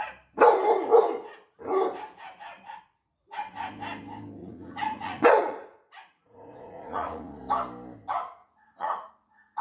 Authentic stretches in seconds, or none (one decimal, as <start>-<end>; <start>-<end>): 0.0-4.4; 7.4-8.4; 9.1-9.6